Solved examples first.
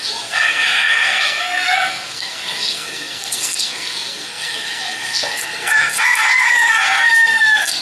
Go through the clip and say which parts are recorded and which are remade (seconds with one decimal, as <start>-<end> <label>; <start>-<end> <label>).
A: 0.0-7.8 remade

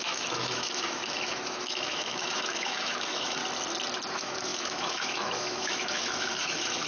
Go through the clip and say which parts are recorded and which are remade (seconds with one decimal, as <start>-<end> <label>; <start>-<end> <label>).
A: 0.0-3.4 remade; 3.4-4.1 recorded; 4.1-6.9 remade

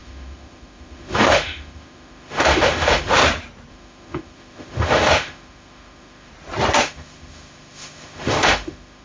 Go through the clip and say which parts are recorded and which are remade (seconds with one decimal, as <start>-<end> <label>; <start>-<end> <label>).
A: 0.0-3.2 remade; 3.2-3.7 recorded; 3.7-6.3 remade; 6.3-6.8 recorded; 6.8-9.0 remade